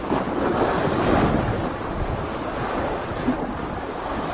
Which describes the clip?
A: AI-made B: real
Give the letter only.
B